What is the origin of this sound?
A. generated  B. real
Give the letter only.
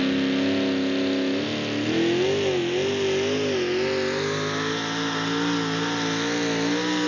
B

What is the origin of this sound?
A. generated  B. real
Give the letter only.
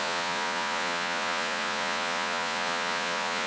A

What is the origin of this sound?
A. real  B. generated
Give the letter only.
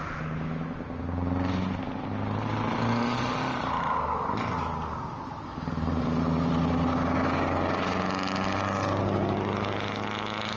A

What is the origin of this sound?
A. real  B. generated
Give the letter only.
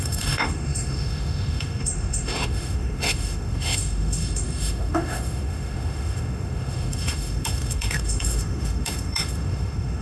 B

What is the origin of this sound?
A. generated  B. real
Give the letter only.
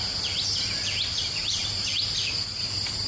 B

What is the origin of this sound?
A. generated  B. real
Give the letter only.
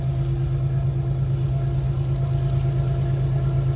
B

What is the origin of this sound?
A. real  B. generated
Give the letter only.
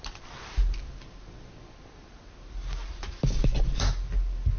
A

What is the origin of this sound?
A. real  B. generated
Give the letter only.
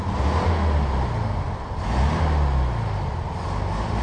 A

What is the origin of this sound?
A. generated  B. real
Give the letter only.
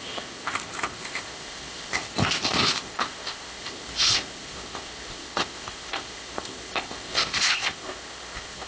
A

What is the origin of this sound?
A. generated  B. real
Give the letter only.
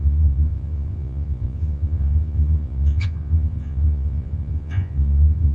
A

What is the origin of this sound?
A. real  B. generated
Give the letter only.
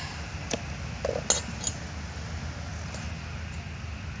A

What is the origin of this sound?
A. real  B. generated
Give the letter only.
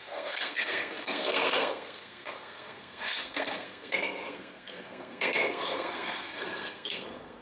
B